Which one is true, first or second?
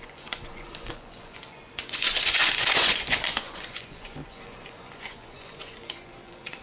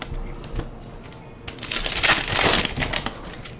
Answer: second